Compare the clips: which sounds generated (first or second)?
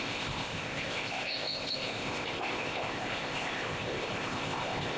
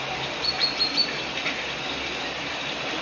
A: first